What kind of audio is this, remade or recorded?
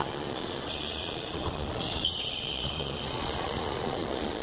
remade